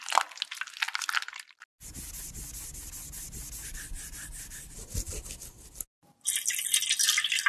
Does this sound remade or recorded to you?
recorded